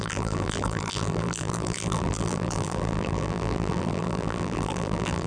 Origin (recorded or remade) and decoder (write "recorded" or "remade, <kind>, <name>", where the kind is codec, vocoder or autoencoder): remade, vocoder, BigVGAN v2